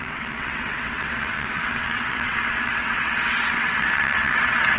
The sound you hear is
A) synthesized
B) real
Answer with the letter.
A